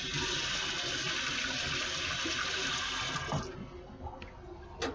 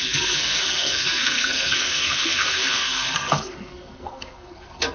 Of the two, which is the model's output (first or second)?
second